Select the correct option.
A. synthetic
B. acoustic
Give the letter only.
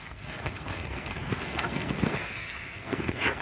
A